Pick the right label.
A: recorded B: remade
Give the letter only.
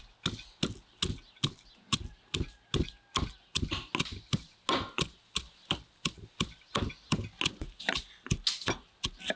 A